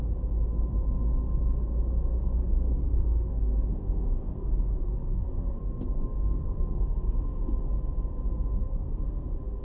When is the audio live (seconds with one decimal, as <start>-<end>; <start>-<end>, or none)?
0.0-2.4; 7.4-8.6